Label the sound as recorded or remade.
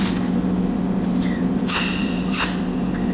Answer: recorded